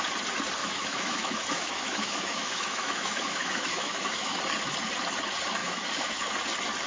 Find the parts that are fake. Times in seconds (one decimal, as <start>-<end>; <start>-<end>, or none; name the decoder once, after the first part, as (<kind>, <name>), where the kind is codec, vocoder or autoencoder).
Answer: 0.6-4.4 (autoencoder, DAC-VAE); 5.6-6.3